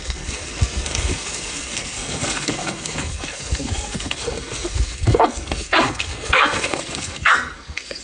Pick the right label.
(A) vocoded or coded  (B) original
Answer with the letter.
A